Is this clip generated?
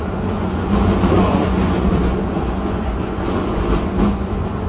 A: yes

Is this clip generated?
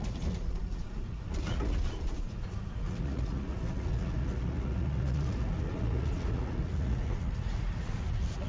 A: yes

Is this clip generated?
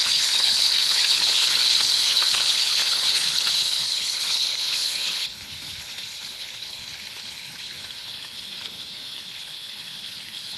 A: yes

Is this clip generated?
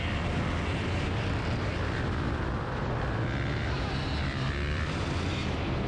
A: yes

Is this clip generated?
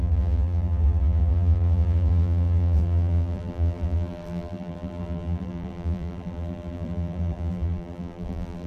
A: yes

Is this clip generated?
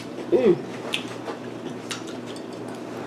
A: no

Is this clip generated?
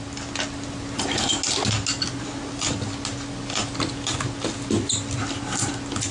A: no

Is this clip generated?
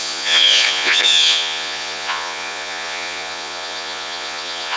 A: yes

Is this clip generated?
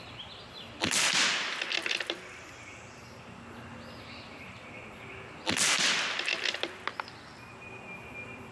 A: no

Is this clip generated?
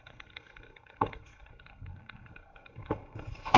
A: yes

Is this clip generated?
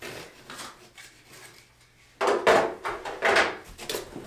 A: no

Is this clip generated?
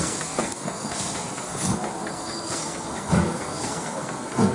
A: yes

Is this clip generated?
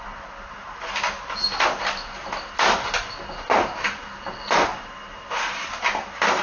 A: no